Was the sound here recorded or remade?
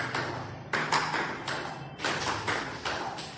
recorded